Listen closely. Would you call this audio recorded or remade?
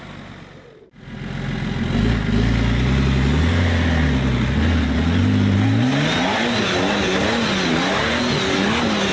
recorded